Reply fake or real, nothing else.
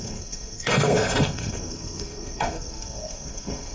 fake